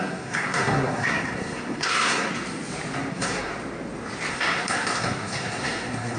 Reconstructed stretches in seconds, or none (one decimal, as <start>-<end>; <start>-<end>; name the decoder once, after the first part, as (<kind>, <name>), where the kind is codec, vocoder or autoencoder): 0.0-2.3 (codec, SNAC); 3.1-3.5; 4.3-6.2